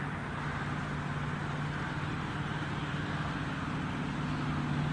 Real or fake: real